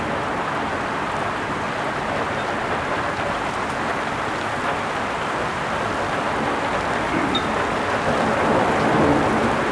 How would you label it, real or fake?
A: real